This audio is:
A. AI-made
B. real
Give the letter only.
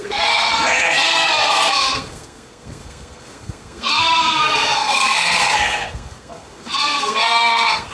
A